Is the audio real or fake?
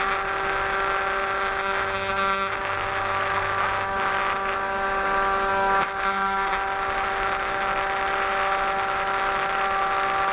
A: real